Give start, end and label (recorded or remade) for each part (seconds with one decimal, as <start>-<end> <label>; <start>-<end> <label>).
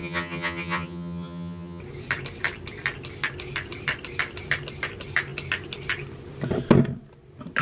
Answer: 0.0-1.8 remade; 1.8-7.6 recorded